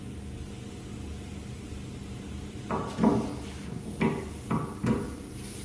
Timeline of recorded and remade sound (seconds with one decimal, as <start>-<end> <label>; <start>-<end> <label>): 0.0-5.6 recorded